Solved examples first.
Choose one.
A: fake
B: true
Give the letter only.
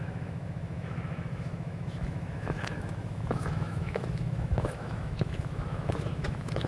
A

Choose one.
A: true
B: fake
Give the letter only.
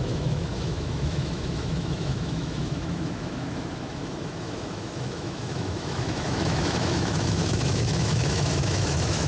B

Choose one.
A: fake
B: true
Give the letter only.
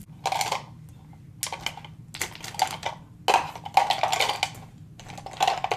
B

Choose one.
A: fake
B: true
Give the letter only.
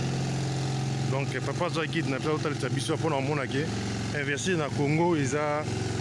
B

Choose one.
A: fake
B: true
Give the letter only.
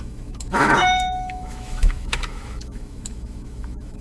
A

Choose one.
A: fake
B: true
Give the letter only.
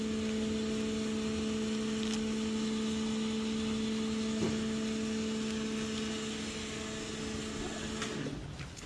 B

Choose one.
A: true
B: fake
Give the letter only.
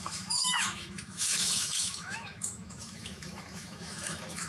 B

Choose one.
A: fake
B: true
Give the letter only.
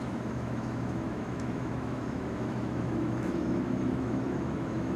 A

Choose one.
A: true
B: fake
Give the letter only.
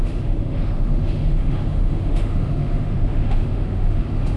B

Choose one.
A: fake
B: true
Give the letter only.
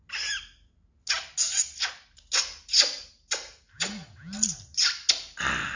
B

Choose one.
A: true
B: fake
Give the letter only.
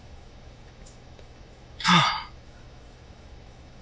B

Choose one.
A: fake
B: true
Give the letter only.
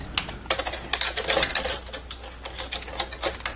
B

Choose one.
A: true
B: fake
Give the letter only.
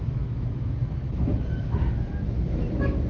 B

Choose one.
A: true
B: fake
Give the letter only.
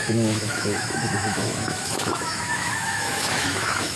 B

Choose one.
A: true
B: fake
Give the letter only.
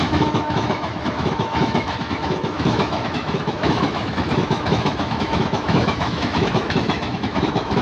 B